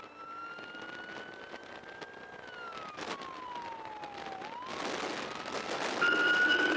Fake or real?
real